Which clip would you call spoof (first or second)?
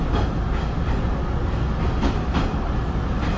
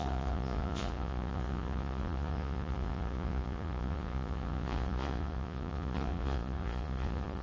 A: second